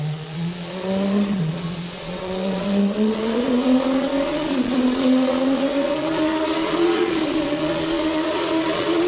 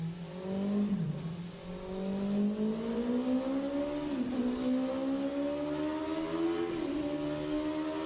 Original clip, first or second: second